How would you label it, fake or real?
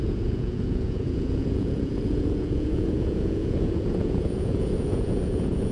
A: fake